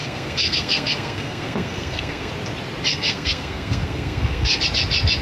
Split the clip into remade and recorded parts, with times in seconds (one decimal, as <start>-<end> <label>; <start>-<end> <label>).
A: 0.0-2.3 remade; 2.3-2.9 recorded; 2.9-4.6 remade; 4.6-5.2 recorded

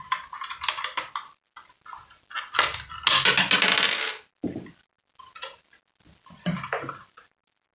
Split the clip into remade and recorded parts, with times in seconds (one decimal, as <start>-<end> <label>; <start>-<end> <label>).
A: 0.0-7.7 recorded